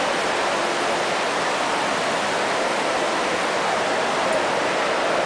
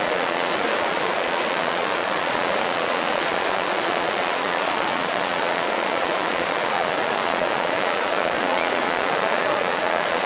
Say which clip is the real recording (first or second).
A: first